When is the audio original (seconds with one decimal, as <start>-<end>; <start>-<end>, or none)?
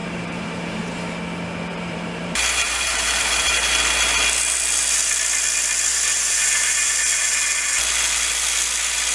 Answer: 0.8-1.7; 3.5-5.9; 6.9-9.1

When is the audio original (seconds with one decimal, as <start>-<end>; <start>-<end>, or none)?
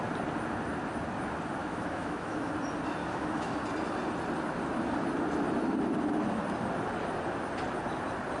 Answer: 0.0-1.6; 2.5-3.0; 3.5-8.4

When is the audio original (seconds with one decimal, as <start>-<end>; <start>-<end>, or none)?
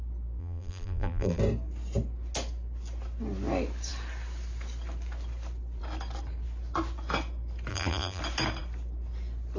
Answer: 0.0-0.4; 1.4-7.7; 8.2-9.6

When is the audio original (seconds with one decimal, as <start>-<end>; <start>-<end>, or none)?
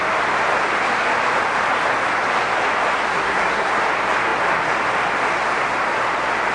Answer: 0.0-3.1; 3.7-6.5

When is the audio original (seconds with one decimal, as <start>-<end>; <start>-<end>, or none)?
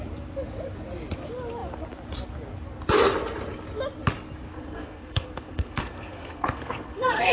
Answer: 0.0-4.5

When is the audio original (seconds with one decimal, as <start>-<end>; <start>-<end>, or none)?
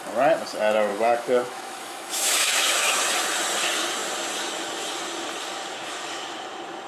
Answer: 0.0-0.9; 3.0-6.9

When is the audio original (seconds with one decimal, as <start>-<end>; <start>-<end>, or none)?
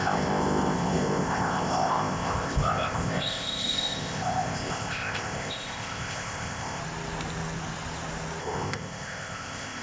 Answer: 6.8-8.4